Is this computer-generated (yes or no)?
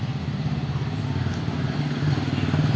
no